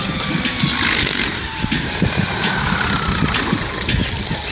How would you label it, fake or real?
real